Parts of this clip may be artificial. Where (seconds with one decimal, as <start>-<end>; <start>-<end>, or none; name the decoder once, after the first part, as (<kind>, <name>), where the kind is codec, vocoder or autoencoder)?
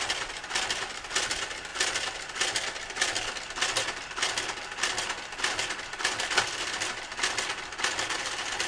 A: none